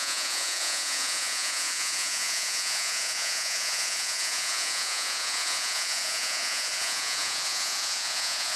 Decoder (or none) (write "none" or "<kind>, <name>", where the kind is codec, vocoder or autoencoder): vocoder, Vocos